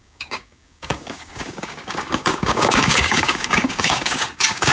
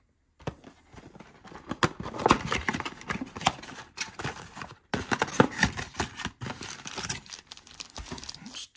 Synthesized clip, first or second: first